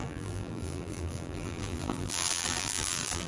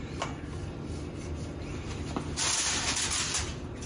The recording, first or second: second